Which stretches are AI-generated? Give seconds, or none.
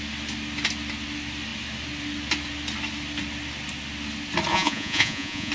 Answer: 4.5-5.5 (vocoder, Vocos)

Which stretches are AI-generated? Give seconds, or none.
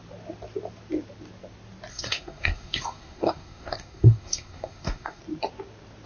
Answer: 1.9-5.2 (codec, SNAC)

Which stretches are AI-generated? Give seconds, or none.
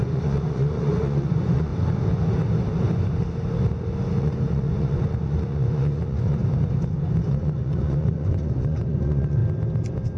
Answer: 0.0-1.7 (vocoder, Vocos); 4.2-6.4; 7.3-9.4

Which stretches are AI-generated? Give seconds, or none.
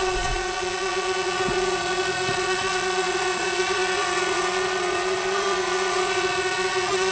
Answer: 0.0-7.1 (vocoder, Vocos)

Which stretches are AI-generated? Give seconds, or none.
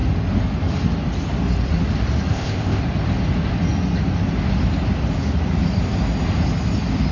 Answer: 2.3-2.8 (codec, ZipCodec)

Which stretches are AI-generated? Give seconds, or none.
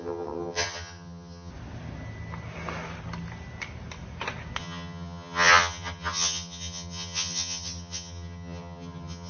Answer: 0.0-1.5 (vocoder, HiFi-GAN); 4.6-9.3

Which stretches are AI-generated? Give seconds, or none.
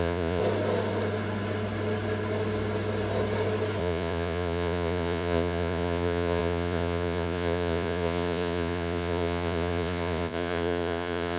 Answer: 0.0-0.4 (vocoder, Vocos); 3.8-11.4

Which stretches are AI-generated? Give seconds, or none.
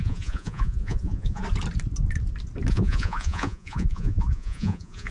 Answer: 0.0-1.4 (vocoder, Vocos); 2.7-5.1